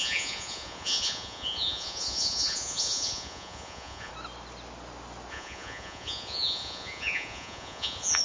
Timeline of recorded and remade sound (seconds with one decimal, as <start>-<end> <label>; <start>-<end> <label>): 0.0-4.1 remade; 4.1-5.3 recorded; 5.3-8.2 remade